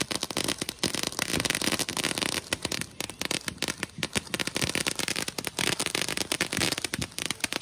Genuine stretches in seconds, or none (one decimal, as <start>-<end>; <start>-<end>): 0.0-7.6